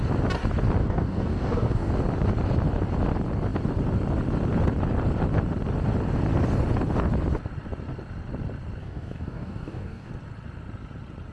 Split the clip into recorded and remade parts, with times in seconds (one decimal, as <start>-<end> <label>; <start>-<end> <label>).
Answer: 0.0-0.8 recorded; 0.8-1.9 remade; 1.9-8.8 recorded; 8.8-10.1 remade; 10.1-11.3 recorded